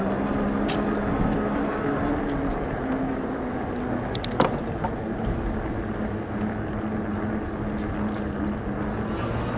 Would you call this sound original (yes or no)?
yes